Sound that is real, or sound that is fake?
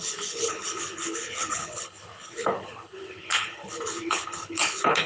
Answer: fake